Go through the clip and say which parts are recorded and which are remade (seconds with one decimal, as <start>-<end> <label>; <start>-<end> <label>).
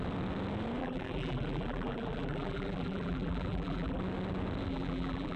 0.0-0.8 recorded; 0.8-4.0 remade; 4.0-4.7 recorded; 4.7-5.4 remade